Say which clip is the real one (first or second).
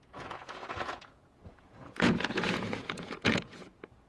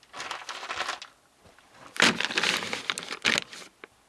second